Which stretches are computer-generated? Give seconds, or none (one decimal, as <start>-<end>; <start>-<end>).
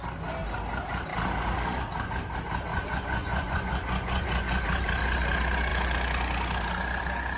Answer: 2.7-4.6